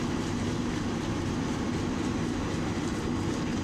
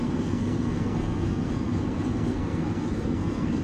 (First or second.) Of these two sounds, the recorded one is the first